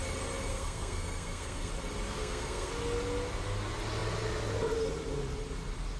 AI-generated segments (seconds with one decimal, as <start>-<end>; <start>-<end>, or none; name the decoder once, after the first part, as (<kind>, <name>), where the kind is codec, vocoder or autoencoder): 0.5-1.7 (codec, SNAC); 2.2-2.7